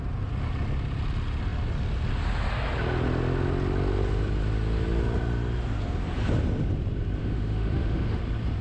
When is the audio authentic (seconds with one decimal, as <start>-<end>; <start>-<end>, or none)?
0.0-7.2; 8.2-8.6